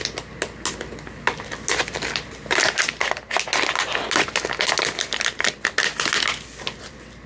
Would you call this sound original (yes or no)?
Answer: yes